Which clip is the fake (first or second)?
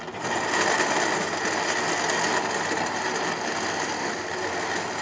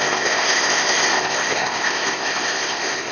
second